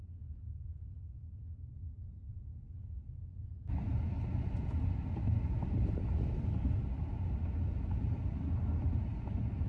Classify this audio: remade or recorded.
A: recorded